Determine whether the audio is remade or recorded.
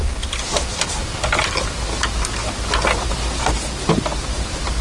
recorded